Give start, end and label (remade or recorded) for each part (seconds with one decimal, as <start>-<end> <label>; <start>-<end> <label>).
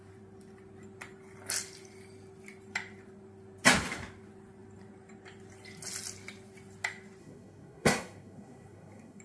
0.0-7.2 recorded; 7.2-9.2 remade